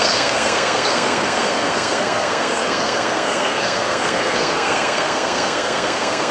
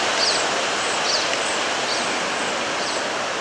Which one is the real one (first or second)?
second